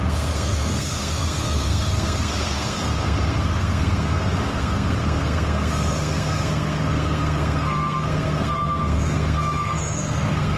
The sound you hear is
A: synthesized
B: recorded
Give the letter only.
A